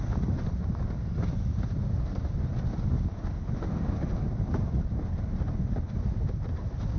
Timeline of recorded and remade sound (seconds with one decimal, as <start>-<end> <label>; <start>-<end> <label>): 0.0-7.0 recorded